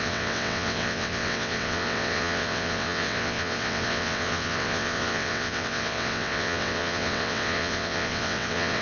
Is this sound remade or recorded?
remade